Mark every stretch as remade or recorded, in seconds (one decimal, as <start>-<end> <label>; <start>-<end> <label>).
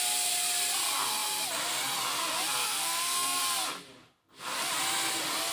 0.0-2.6 recorded; 2.6-3.4 remade; 3.4-5.5 recorded